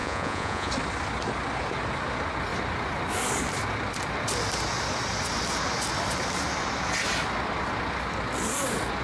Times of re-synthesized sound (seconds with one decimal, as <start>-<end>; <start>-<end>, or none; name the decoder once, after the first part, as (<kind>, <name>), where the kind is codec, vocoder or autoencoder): 0.0-0.7 (vocoder, Vocos)